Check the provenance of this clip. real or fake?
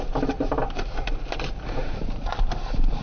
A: fake